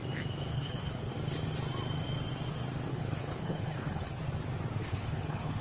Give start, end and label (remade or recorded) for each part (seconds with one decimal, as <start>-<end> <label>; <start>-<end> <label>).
0.0-0.5 recorded; 0.5-1.1 remade; 1.1-2.9 recorded; 2.9-4.2 remade; 4.2-4.8 recorded; 4.8-5.6 remade